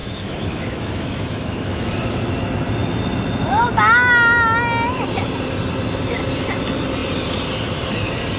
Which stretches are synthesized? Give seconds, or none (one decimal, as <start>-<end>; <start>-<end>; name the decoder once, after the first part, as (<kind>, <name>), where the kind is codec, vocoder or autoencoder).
0.0-1.9 (autoencoder, DAC-VAE)